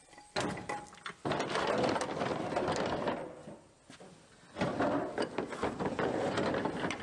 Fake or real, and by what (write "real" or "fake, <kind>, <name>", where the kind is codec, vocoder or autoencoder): real